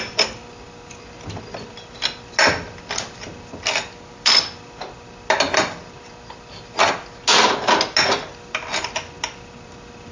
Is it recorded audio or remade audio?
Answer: recorded